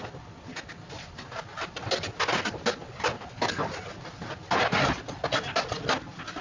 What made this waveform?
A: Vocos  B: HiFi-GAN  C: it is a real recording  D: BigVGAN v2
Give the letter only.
C